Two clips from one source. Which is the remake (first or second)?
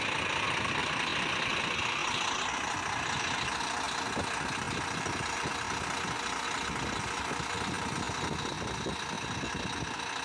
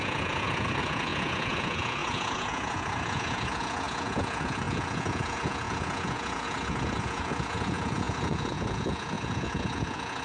second